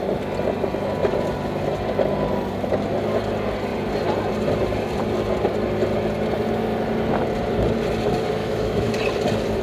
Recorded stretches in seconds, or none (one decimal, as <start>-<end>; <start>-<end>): 0.0-8.4; 8.9-9.6